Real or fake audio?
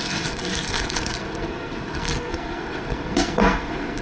fake